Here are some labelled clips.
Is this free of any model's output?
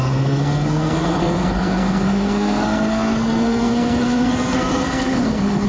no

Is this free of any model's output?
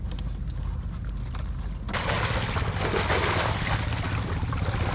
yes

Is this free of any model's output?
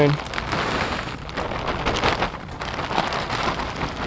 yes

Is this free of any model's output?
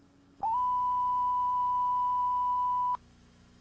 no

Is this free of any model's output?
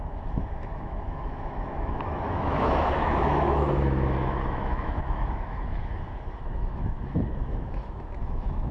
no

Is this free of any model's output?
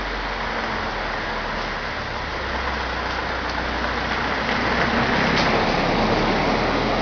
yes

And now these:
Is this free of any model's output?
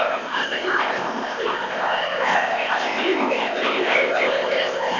no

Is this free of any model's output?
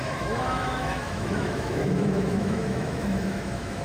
no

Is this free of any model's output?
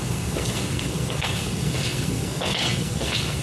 no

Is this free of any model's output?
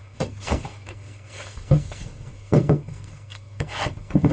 no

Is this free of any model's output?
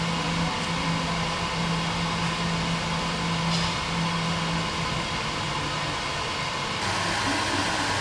yes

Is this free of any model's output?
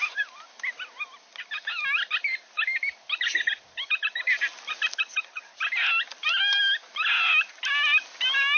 yes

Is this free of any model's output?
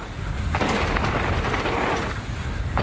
yes